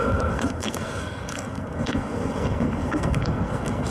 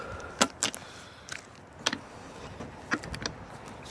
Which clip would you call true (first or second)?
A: second